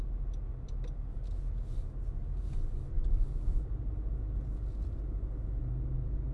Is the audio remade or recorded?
recorded